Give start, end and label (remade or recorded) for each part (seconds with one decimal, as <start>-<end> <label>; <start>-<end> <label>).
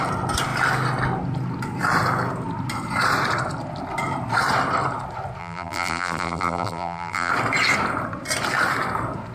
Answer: 0.0-5.4 recorded; 5.4-7.3 remade; 7.3-9.3 recorded